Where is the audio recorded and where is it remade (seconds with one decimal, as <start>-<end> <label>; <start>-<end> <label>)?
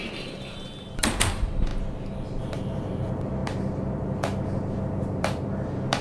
0.0-1.7 remade; 1.7-2.4 recorded; 2.4-6.0 remade